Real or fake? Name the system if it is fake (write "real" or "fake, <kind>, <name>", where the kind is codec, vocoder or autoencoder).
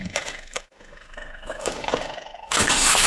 fake, autoencoder, DAC-VAE